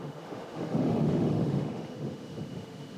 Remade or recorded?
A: remade